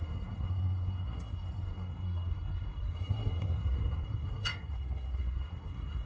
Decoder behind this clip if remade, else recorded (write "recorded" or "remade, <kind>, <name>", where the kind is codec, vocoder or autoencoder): remade, codec, SNAC